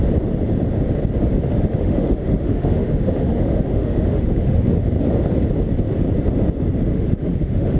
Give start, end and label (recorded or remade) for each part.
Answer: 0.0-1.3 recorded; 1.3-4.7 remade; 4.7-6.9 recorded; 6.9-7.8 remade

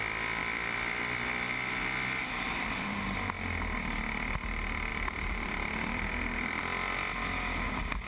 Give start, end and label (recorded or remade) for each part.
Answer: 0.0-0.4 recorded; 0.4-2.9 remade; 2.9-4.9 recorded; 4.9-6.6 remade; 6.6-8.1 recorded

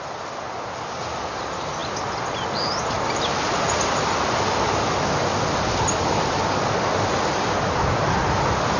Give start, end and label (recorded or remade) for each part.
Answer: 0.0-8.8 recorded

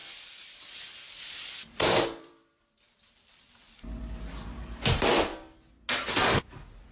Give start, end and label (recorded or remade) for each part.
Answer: 0.0-4.1 remade; 4.1-6.9 recorded

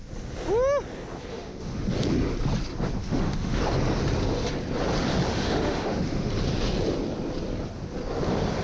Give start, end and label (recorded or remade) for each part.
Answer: 0.0-1.3 recorded; 1.3-1.8 remade; 1.8-3.0 recorded; 3.0-3.6 remade; 3.6-5.3 recorded; 5.3-6.3 remade; 6.3-8.6 recorded